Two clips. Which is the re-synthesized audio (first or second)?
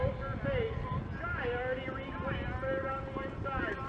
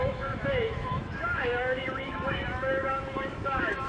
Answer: second